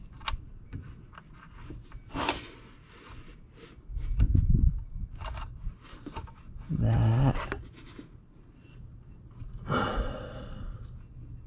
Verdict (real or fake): real